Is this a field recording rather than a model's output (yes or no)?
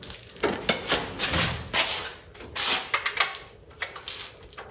yes